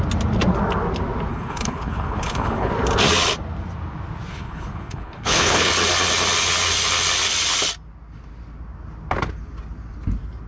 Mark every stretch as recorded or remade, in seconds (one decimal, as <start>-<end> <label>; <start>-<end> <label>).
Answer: 0.0-1.3 recorded; 1.3-2.7 remade; 2.7-4.3 recorded; 4.3-5.7 remade; 5.7-10.5 recorded